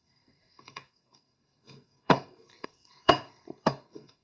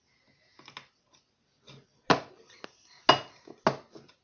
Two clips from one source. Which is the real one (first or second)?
second